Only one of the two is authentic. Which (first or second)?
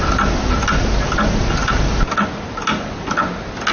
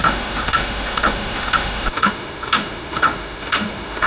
first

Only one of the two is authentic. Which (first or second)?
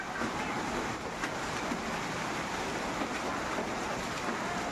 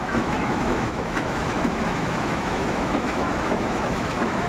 first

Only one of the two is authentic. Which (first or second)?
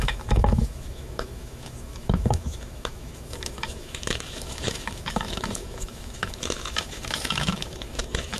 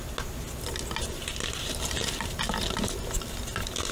second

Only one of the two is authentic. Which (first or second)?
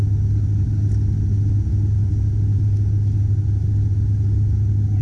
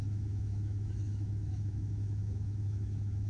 first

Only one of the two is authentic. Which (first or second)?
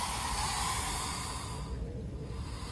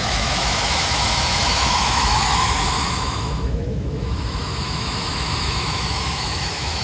first